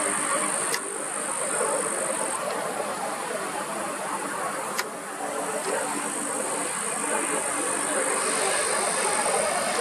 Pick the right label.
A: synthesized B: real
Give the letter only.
B